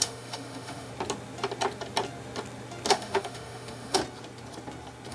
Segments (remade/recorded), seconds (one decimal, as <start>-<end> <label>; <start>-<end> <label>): 0.0-0.9 remade; 0.9-2.9 recorded; 2.9-4.0 remade; 4.0-5.1 recorded